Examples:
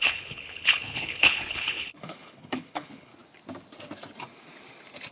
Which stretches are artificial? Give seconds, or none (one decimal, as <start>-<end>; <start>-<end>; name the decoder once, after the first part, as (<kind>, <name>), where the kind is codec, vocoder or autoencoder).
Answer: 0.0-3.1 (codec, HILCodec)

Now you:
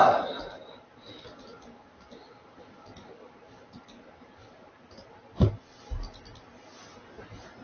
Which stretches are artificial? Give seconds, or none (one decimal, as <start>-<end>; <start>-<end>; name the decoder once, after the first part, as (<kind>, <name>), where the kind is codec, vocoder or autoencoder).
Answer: none

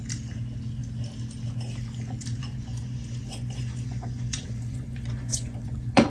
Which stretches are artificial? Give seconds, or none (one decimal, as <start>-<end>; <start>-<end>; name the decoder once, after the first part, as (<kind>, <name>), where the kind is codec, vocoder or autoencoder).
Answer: 2.4-6.1 (vocoder, Vocos)

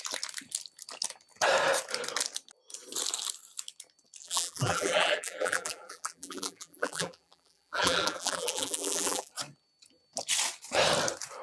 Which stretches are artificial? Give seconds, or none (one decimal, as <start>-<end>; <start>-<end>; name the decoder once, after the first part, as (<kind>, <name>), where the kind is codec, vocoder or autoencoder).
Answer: 4.2-9.3 (vocoder, BigVGAN v2)

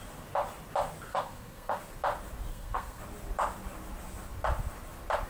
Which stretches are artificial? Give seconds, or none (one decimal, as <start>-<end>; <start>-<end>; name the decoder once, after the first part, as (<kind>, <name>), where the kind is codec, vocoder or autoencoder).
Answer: 1.1-1.8 (codec, SNAC); 2.5-3.0

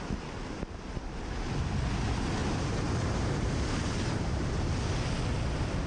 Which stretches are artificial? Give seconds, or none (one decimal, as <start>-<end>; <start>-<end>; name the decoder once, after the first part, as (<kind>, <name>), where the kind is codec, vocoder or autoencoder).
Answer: 2.4-5.1 (vocoder, BigVGAN v2)

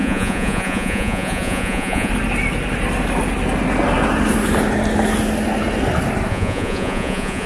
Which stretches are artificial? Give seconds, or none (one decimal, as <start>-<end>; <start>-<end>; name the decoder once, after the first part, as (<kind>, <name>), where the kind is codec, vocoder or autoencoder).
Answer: 0.0-2.1 (vocoder, Vocos); 6.3-7.5